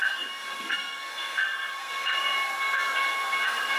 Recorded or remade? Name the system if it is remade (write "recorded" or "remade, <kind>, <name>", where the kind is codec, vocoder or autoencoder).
remade, codec, SNAC